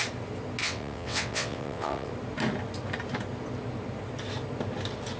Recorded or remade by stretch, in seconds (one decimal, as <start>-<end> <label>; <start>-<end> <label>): 0.0-0.6 recorded; 0.6-2.1 remade; 2.1-5.2 recorded